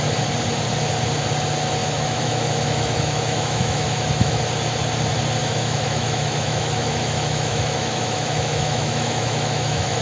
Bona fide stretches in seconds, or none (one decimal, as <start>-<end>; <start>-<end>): 0.0-1.8; 4.4-5.4